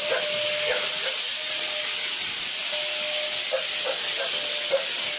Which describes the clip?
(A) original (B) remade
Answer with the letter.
A